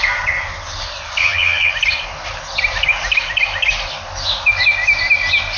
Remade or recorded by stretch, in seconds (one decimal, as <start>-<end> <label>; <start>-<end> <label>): 0.0-1.2 recorded; 1.2-1.7 remade; 1.7-5.6 recorded